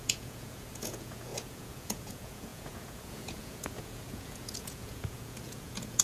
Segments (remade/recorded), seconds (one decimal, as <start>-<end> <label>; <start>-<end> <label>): 0.0-6.0 remade